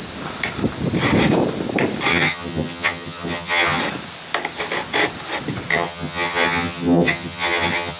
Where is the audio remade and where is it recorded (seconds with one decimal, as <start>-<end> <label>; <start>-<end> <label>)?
0.0-2.1 recorded; 2.1-3.8 remade; 3.8-5.7 recorded; 5.7-8.0 remade